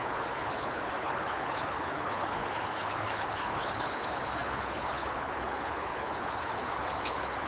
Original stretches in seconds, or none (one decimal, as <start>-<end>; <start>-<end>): none